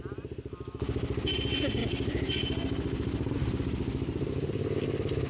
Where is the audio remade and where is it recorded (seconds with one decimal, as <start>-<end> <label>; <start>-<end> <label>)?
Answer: 0.0-5.3 recorded